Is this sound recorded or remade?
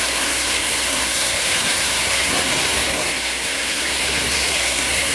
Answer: remade